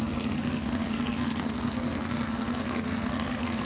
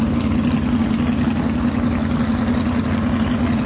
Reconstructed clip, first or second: first